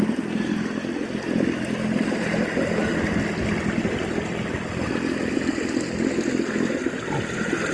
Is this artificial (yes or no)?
no